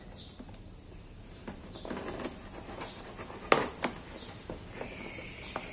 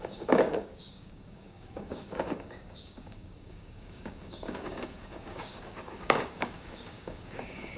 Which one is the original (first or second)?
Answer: first